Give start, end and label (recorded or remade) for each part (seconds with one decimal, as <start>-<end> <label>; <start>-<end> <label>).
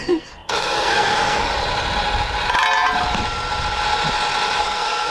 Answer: 0.0-1.5 remade; 1.5-4.6 recorded; 4.6-5.1 remade